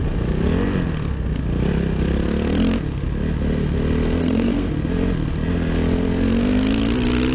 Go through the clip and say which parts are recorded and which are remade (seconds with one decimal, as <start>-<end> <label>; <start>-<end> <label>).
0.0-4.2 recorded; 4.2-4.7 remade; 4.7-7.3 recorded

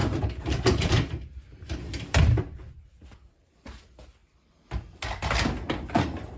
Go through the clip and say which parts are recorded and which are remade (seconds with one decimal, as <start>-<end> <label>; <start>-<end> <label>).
0.0-3.8 remade; 3.8-6.4 recorded

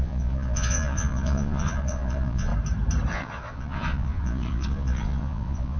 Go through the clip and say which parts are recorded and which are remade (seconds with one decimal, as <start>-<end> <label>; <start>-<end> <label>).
0.0-2.5 remade; 2.5-3.1 recorded; 3.1-5.8 remade

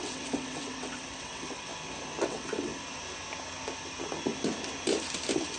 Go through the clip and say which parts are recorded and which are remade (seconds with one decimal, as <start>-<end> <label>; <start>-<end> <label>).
0.0-1.7 remade; 1.7-2.2 recorded; 2.2-2.7 remade; 2.7-5.6 recorded

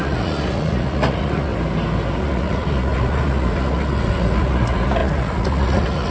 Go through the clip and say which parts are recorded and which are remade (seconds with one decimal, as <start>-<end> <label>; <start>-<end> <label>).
0.0-1.5 remade; 1.5-2.2 recorded; 2.2-6.1 remade

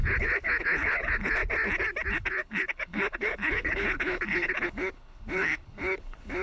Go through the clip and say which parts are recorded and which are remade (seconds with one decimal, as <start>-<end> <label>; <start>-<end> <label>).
0.0-1.4 remade; 1.4-2.1 recorded; 2.1-6.4 remade

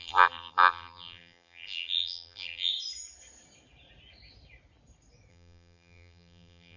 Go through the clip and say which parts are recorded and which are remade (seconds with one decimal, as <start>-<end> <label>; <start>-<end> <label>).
0.0-2.7 remade; 2.7-5.3 recorded; 5.3-6.8 remade